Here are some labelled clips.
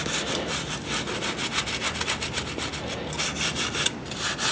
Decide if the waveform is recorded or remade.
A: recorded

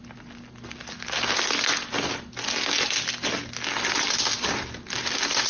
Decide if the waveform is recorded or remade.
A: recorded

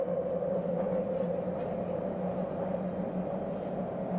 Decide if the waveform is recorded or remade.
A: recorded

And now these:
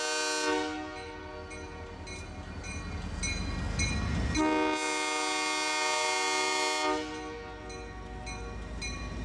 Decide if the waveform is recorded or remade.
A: recorded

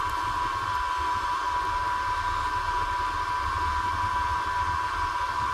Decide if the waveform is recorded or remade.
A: recorded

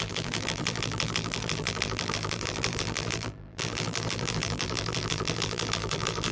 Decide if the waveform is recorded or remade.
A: remade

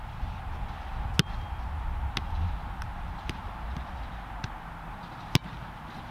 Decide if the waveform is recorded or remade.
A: recorded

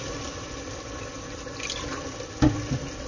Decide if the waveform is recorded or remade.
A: recorded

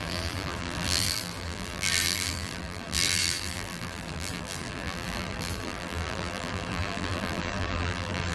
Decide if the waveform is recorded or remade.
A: remade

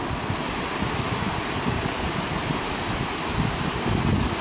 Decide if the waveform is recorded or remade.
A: recorded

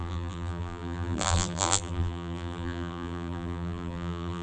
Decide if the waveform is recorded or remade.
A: remade